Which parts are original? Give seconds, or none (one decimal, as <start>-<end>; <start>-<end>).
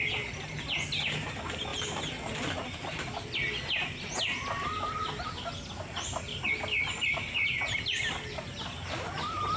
0.0-9.6